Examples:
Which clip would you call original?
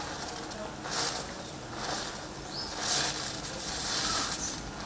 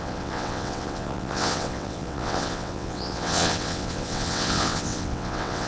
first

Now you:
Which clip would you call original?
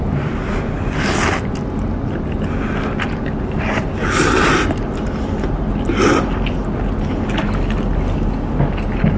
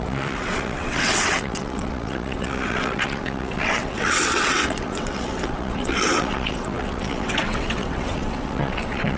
first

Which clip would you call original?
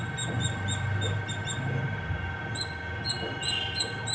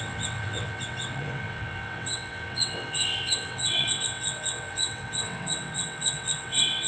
first